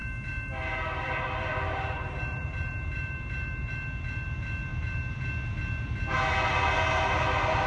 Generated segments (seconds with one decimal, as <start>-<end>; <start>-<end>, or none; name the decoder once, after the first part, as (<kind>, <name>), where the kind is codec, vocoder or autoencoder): 0.0-3.7 (vocoder, BigVGAN v2); 4.7-5.3